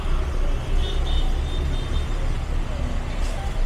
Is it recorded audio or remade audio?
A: recorded